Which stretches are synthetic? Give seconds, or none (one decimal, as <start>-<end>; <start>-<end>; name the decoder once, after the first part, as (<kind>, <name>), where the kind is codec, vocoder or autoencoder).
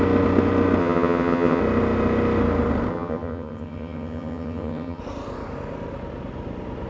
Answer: 0.8-1.6 (vocoder, HiFi-GAN); 2.9-5.0